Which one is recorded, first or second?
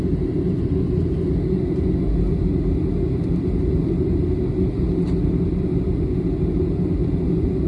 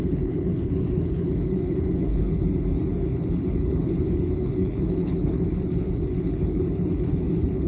first